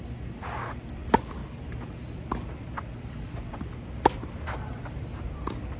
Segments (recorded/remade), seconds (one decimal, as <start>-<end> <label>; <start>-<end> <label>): 0.0-5.8 recorded